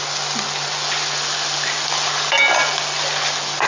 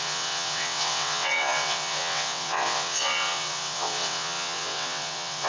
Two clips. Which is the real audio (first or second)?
first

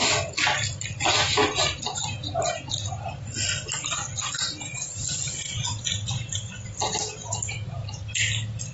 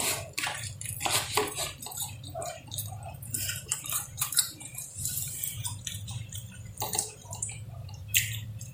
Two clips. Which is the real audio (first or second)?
first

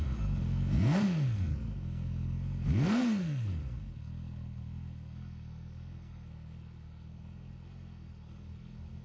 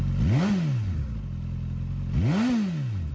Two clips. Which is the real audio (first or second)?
second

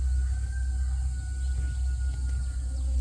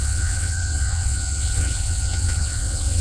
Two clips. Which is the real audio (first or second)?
first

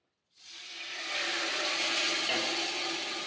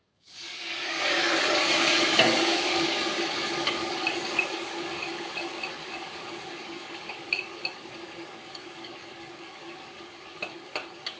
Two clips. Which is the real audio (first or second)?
first